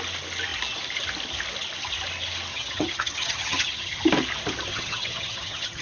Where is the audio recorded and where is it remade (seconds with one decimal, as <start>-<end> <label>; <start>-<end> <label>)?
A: 0.0-2.5 recorded; 2.5-4.0 remade; 4.0-4.7 recorded; 4.7-5.8 remade